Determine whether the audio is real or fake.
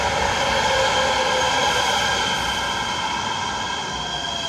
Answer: real